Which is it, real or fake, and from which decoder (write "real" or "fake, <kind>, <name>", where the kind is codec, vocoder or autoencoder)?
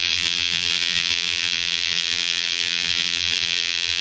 fake, vocoder, BigVGAN v2